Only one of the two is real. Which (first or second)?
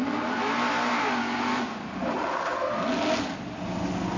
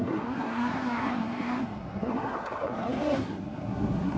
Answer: first